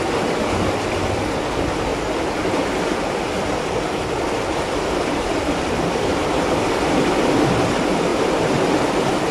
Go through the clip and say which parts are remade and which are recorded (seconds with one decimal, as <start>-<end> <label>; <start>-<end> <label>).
0.0-1.9 recorded; 1.9-6.2 remade; 6.2-8.1 recorded; 8.1-8.9 remade; 8.9-9.3 recorded